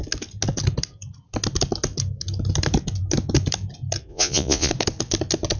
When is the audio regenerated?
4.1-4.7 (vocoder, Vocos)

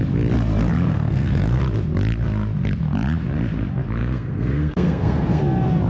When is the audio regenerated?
0.9-1.6 (codec, SNAC); 4.0-5.4

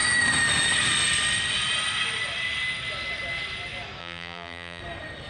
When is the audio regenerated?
4.0-4.8 (vocoder, BigVGAN v2)

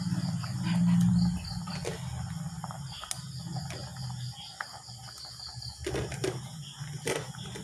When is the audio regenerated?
none

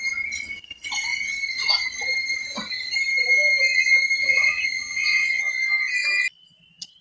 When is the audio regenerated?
4.2-5.4 (vocoder, HiFi-GAN)

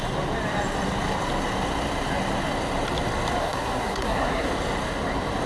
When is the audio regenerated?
3.4-4.5 (codec, SNAC)